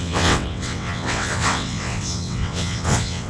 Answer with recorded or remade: remade